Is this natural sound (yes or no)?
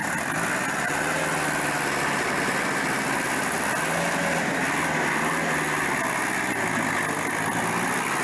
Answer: yes